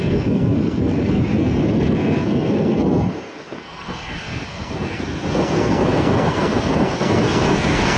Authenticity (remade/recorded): remade